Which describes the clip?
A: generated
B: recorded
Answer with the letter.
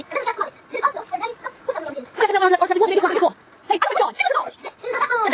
A